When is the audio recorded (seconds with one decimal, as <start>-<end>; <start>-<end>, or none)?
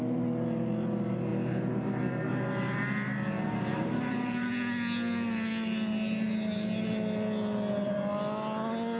0.0-3.7; 4.5-9.0